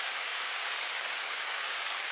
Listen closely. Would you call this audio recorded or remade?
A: remade